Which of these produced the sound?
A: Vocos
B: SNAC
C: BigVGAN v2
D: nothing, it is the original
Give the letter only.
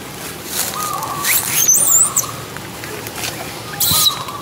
D